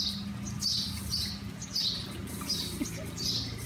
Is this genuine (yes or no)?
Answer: yes